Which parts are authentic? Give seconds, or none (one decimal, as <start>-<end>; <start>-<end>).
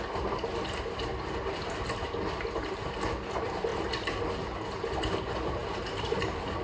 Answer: 0.0-6.6